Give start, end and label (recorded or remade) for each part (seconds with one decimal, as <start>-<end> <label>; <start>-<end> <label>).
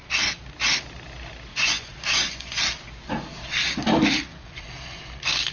0.0-1.5 recorded; 1.5-2.6 remade; 2.6-4.3 recorded; 4.3-5.0 remade; 5.0-5.5 recorded